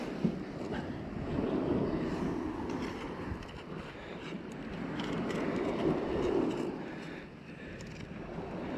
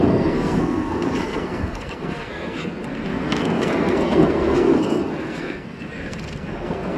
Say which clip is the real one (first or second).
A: first